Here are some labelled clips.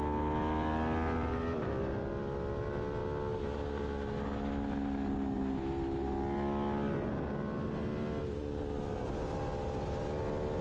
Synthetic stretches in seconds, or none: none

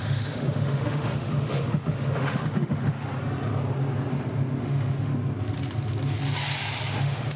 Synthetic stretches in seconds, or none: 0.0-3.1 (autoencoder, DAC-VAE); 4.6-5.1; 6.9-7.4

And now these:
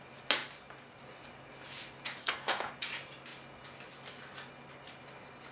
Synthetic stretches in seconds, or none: 2.2-2.7 (codec, SNAC)